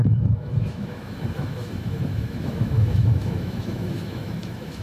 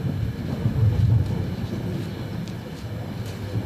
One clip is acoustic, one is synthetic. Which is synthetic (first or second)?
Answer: first